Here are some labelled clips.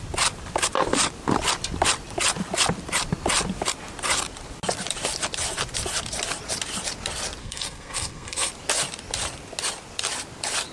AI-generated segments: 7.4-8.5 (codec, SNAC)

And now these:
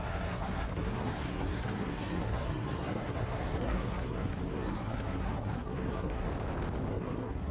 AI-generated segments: 0.0-6.3 (codec, SNAC); 6.9-7.5

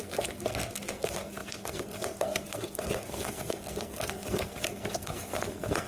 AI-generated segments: 0.0-5.9 (codec, SNAC)

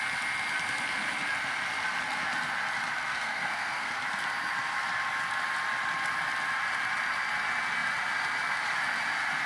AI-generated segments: 3.1-3.9 (codec, SNAC)